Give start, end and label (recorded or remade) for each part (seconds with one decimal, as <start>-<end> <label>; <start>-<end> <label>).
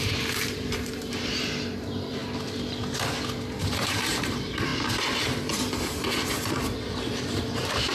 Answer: 0.0-2.2 remade; 2.2-3.6 recorded; 3.6-7.9 remade